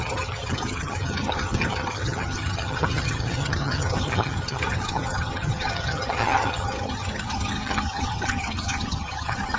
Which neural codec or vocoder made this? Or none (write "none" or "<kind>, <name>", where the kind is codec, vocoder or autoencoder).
vocoder, HiFi-GAN